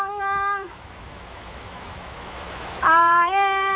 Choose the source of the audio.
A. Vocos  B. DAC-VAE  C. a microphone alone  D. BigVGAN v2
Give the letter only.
B